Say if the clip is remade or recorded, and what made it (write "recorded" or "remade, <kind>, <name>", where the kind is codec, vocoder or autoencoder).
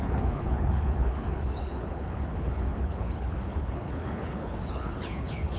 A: remade, codec, HILCodec